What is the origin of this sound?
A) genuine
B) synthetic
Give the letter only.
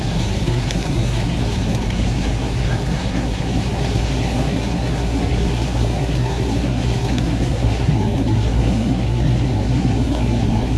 B